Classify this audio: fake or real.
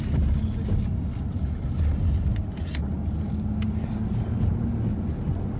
real